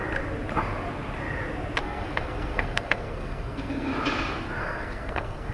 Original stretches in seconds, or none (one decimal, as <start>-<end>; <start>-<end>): 0.0-1.8; 3.9-4.6